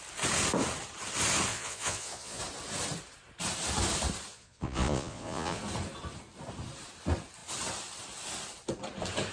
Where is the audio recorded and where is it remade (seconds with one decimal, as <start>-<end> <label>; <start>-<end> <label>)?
0.0-1.5 recorded; 1.5-2.4 remade; 2.4-4.3 recorded; 4.3-5.6 remade; 5.6-9.3 recorded